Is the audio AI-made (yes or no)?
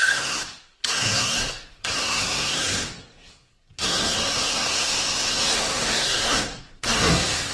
yes